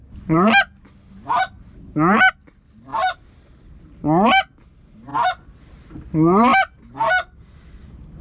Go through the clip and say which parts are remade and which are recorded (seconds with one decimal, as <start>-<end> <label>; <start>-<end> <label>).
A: 0.0-8.2 recorded